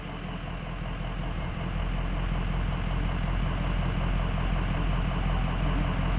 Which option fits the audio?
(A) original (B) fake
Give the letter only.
A